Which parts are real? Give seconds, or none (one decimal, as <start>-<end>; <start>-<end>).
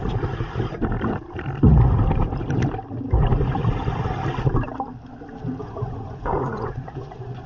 0.0-5.6